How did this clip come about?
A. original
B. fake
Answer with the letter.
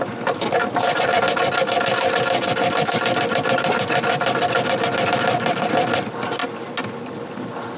A